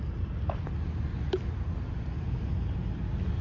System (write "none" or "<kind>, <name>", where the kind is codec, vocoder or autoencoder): none